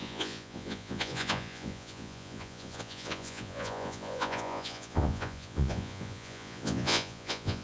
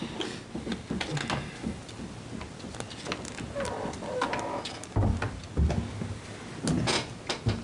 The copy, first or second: first